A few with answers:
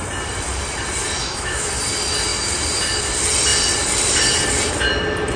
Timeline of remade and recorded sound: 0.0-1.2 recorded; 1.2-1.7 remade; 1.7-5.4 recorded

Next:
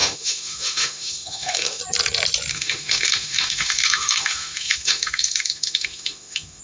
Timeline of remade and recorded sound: 0.0-1.8 remade; 1.8-2.5 recorded; 2.5-6.6 remade

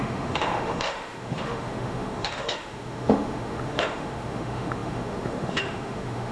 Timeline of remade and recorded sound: 0.0-6.3 remade

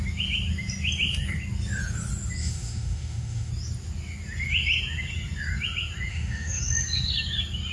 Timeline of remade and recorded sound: 0.0-2.4 recorded; 2.4-3.5 remade; 3.5-6.1 recorded; 6.1-6.6 remade; 6.6-7.7 recorded

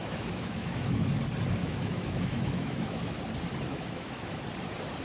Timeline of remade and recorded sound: 0.0-1.1 remade; 1.1-1.6 recorded; 1.6-3.2 remade; 3.2-3.7 recorded; 3.7-4.4 remade; 4.4-5.0 recorded

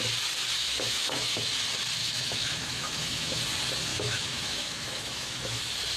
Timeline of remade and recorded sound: 0.0-0.6 recorded; 0.6-1.5 remade; 1.5-2.0 recorded; 2.0-3.4 remade; 3.4-3.9 recorded; 3.9-5.6 remade; 5.6-6.0 recorded

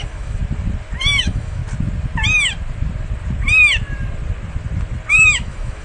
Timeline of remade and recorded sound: 0.0-0.4 remade; 0.4-1.2 recorded; 1.2-1.6 remade; 1.6-5.1 recorded; 5.1-5.8 remade

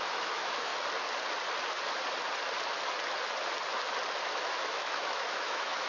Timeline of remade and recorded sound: 0.0-0.7 remade; 0.7-4.2 recorded; 4.2-5.9 remade